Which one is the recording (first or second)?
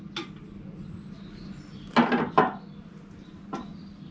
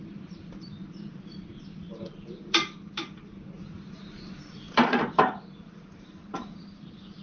first